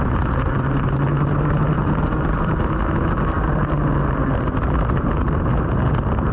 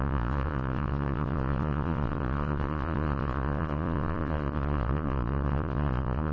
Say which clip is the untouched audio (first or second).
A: first